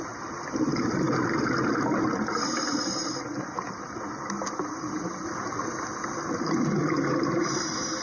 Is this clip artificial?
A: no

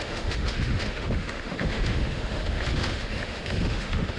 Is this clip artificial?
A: yes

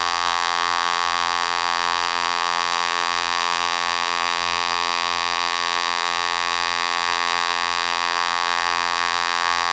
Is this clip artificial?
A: yes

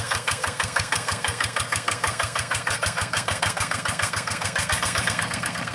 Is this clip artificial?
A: yes